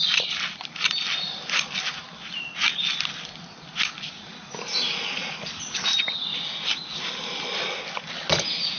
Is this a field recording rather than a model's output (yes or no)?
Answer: yes